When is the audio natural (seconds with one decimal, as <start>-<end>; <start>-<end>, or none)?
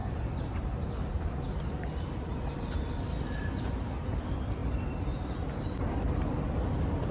0.0-7.1